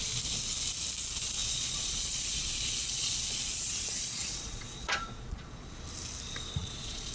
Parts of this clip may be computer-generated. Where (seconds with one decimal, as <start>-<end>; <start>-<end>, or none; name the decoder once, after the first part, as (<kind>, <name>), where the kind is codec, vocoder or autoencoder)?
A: 1.4-5.7 (vocoder, Vocos); 6.6-7.1